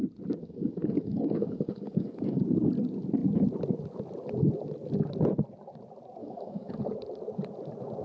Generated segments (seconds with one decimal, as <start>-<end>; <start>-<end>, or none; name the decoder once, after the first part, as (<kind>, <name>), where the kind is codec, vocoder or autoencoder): 0.4-2.4 (codec, DAC); 6.2-6.8